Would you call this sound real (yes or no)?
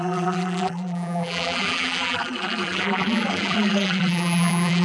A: no